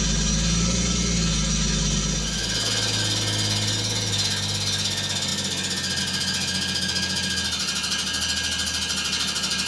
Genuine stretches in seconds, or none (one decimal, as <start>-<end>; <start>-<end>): 0.0-9.7